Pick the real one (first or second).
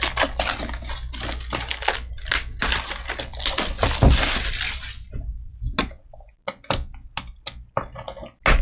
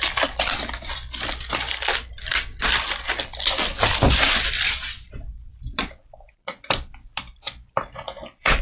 first